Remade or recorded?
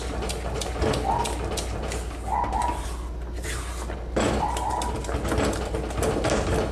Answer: recorded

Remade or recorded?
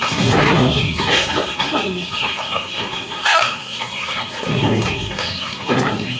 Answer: remade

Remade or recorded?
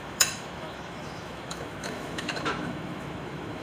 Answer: remade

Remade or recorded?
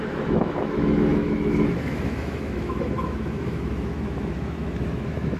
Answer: remade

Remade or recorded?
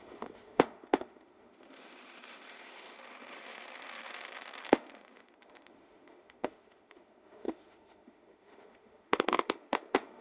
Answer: remade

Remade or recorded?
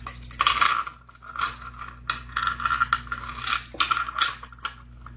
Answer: recorded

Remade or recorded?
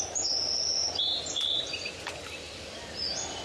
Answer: remade